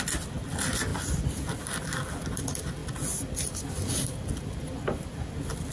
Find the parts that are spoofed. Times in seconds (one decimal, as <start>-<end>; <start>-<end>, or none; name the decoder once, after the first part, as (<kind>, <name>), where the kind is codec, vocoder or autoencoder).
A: none